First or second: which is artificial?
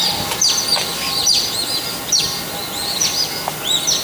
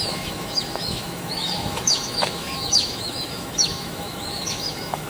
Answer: second